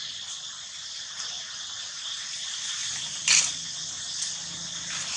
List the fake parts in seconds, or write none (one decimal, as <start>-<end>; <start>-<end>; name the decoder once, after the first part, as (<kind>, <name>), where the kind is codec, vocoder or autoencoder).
none